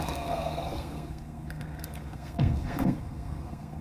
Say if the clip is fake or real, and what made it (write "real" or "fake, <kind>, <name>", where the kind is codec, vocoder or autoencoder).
fake, codec, SNAC